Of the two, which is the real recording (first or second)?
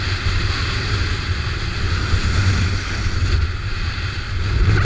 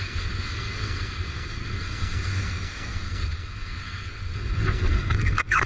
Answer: first